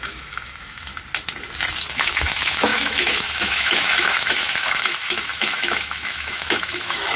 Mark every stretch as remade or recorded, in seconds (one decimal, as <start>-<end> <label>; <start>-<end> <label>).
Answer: 0.0-0.9 remade; 0.9-1.9 recorded; 1.9-7.2 remade